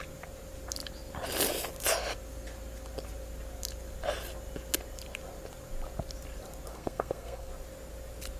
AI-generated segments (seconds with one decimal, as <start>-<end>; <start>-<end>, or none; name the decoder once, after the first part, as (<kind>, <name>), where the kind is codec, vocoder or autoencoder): 6.7-7.5 (codec, SNAC)